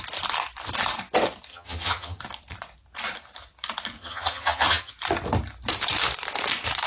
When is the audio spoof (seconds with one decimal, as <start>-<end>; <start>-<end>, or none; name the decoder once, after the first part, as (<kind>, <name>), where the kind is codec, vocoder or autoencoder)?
1.5-2.2 (vocoder, HiFi-GAN); 4.0-4.9